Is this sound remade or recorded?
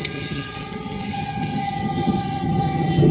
remade